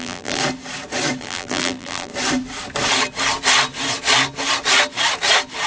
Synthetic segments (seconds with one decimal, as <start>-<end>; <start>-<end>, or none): 0.0-0.4; 1.2-2.1